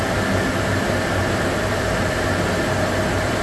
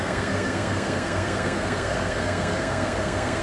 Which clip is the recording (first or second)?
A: first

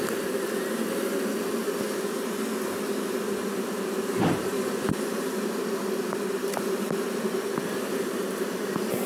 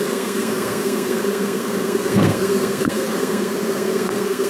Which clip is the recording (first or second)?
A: first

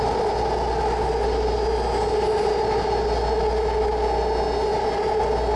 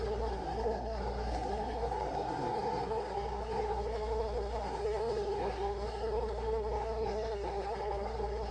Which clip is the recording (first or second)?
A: first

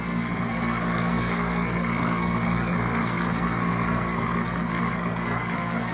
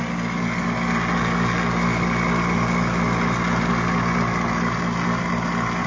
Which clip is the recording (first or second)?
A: second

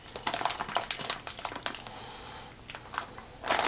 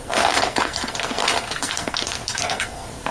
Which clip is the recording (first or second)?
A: first